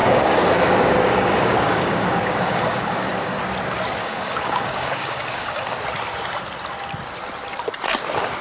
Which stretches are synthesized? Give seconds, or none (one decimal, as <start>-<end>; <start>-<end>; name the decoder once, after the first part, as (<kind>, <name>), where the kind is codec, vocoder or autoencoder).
0.0-3.4 (codec, DAC); 4.0-5.8